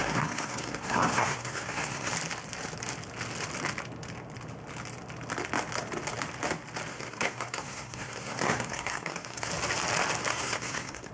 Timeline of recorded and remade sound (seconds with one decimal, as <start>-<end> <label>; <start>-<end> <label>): 0.0-2.1 remade; 2.1-6.9 recorded; 6.9-9.5 remade; 9.5-10.3 recorded; 10.3-11.1 remade